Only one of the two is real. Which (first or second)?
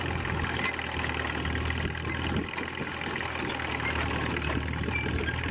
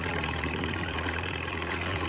first